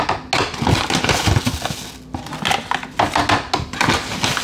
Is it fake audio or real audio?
real